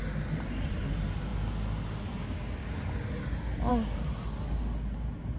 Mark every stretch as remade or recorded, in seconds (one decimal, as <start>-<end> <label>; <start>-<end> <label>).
0.0-5.4 recorded